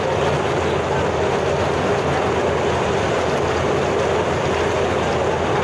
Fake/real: real